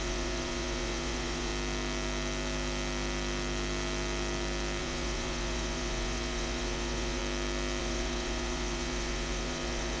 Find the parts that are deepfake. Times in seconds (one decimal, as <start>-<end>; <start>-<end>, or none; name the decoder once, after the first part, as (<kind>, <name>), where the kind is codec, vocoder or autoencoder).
0.0-1.5 (vocoder, Vocos); 4.8-7.2; 7.8-10.0